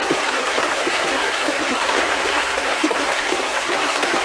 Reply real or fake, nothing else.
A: fake